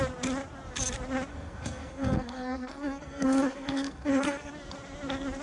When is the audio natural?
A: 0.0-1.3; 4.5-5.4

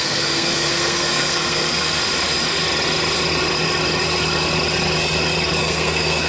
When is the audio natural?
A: 2.0-5.6

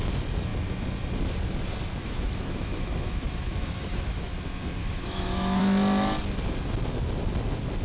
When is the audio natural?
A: 0.0-2.0; 4.3-4.8; 5.6-7.8

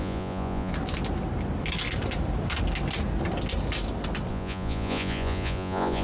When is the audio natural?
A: 0.7-4.3

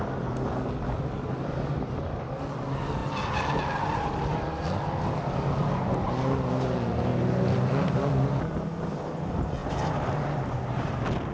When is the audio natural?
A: 0.0-7.1; 8.1-9.6; 10.9-11.3